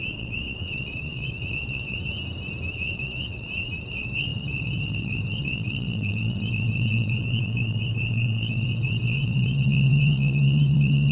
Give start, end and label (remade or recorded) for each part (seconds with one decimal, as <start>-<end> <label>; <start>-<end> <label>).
0.0-2.1 remade; 2.1-2.7 recorded; 2.7-11.1 remade